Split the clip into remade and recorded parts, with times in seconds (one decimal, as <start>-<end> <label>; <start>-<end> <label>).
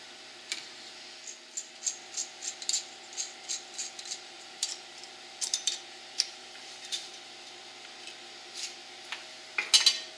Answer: 0.0-3.8 recorded; 3.8-7.1 remade; 7.1-10.2 recorded